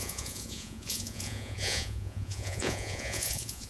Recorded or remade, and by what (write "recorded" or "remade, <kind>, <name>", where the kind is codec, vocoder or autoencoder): remade, vocoder, Vocos